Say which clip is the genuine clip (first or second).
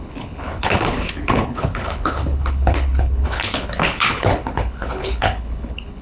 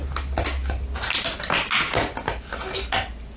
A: second